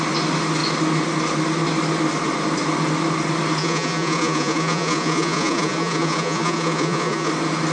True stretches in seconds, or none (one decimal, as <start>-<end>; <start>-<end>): 0.0-3.6; 7.3-7.7